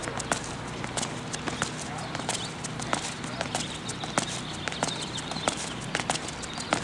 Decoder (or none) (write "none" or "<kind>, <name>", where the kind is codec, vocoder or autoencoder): none